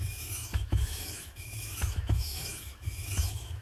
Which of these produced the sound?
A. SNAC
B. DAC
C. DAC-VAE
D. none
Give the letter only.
C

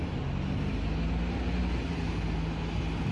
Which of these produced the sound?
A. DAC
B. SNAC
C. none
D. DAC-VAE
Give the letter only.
C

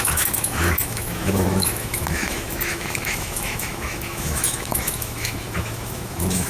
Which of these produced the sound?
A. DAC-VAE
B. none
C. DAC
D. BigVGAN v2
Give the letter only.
A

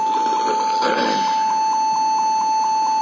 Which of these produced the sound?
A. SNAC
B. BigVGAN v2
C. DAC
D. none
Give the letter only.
D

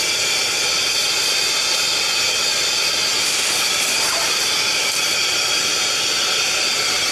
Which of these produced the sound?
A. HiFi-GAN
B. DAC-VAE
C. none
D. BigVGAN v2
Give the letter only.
C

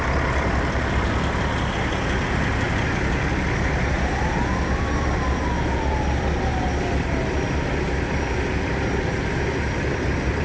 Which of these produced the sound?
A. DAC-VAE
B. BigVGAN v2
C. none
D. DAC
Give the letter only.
C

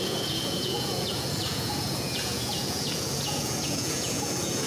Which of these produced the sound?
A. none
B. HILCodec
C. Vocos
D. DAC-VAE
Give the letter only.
C